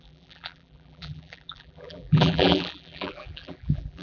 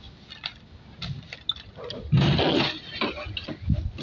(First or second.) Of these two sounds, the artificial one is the first